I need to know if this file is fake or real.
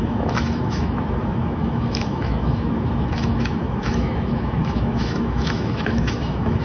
fake